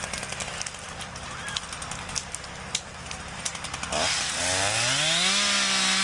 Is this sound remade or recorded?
recorded